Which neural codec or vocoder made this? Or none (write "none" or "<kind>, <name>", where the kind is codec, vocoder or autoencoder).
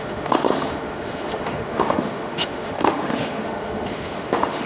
autoencoder, DAC-VAE